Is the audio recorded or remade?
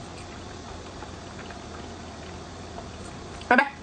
remade